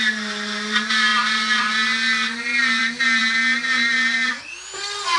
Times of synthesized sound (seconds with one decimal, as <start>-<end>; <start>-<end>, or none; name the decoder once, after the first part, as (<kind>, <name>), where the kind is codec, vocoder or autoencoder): none